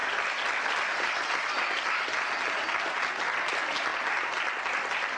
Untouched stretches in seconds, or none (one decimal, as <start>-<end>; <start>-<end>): 0.0-5.2